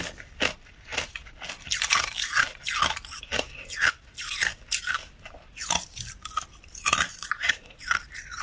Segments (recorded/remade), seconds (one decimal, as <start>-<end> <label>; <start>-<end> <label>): 0.0-7.1 recorded; 7.1-7.8 remade; 7.8-8.4 recorded